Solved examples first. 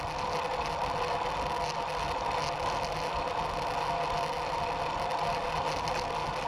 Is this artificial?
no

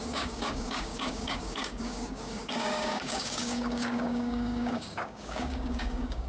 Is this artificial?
yes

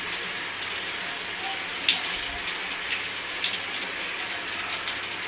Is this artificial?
no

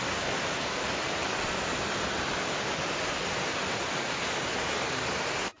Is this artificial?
no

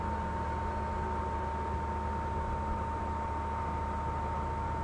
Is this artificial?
no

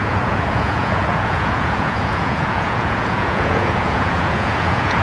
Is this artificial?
yes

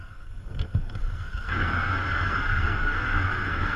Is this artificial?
yes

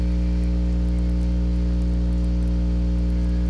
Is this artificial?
no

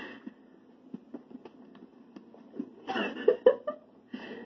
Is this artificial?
no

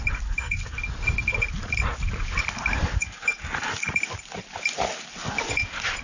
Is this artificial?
no